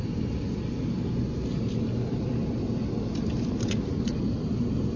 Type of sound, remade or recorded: recorded